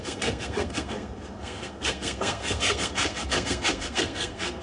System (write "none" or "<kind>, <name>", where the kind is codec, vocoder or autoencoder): codec, SNAC